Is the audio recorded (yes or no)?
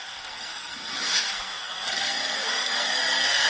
no